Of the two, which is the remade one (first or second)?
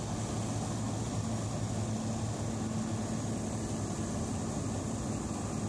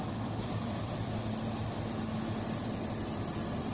second